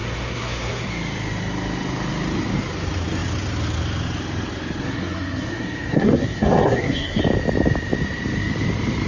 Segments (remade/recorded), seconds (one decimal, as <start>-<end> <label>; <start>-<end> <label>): 0.0-0.9 remade; 0.9-4.8 recorded; 4.8-7.2 remade; 7.2-9.1 recorded